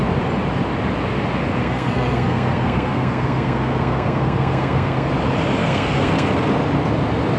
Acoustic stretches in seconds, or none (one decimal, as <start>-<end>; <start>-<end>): 0.0-1.6; 5.1-5.6; 6.5-7.4